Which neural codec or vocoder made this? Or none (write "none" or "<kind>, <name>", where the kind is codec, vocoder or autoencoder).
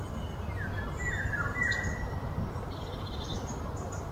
none